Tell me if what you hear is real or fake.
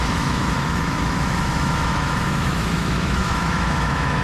fake